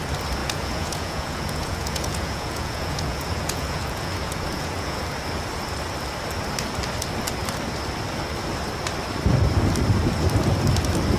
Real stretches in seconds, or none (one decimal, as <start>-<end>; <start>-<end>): 0.0-0.4; 5.0-11.2